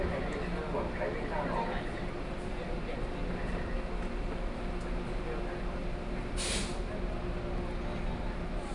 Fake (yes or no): no